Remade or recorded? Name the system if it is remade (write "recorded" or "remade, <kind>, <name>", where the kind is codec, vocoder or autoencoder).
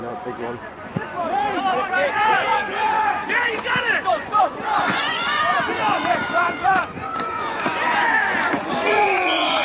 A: remade, vocoder, Vocos